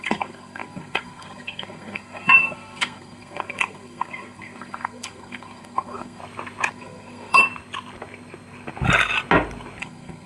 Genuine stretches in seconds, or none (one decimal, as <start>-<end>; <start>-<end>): 6.2-6.7; 7.4-9.8